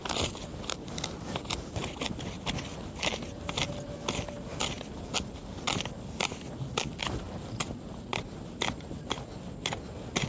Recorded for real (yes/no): yes